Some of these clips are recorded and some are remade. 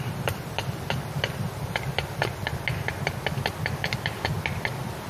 recorded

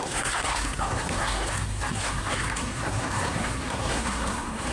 remade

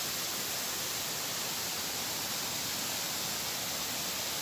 recorded